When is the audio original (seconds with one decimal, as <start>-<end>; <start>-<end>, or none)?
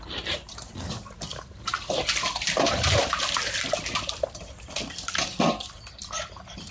1.3-3.1